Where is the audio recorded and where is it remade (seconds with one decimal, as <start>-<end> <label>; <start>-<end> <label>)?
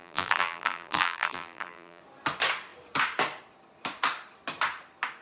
0.0-2.0 remade; 2.0-5.2 recorded